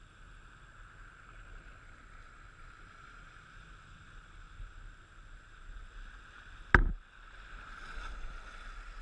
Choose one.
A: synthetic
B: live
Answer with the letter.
B